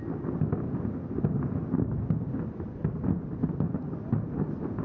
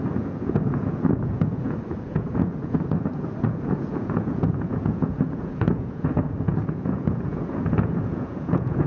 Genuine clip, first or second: first